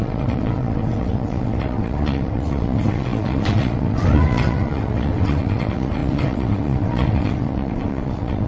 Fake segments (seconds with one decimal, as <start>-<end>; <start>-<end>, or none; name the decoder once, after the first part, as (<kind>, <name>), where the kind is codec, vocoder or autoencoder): 0.0-8.5 (vocoder, WaveNeXt)